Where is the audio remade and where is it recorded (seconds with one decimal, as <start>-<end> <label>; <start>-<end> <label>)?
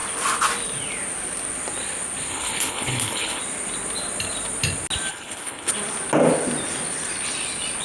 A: 0.0-2.3 recorded; 2.3-3.4 remade; 3.4-5.1 recorded; 5.1-5.7 remade; 5.7-7.8 recorded